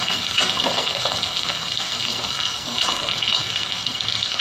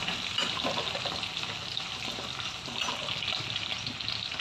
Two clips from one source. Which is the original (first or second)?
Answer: second